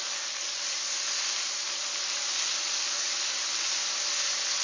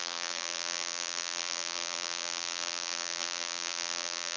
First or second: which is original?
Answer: first